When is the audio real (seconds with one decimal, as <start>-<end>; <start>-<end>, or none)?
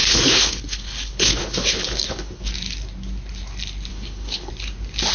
2.5-3.9; 4.5-5.1